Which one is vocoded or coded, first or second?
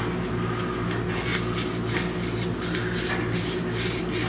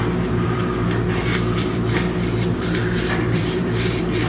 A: second